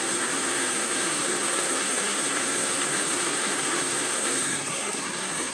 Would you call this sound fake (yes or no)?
yes